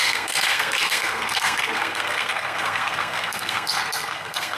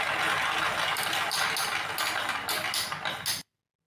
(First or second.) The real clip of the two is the second